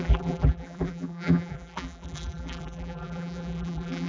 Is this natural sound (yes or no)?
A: no